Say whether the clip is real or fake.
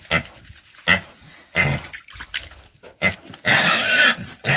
real